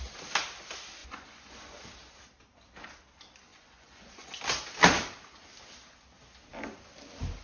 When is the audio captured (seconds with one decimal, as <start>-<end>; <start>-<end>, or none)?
0.0-1.0; 1.8-3.5; 4.4-7.4